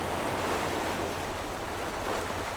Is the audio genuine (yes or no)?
yes